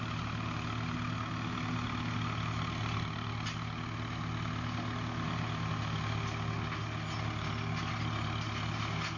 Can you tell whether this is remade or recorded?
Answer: recorded